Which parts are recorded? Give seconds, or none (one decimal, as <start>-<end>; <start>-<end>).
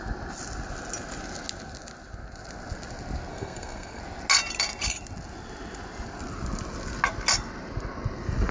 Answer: 0.0-3.3; 4.0-8.5